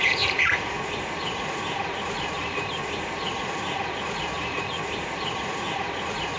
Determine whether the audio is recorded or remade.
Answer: remade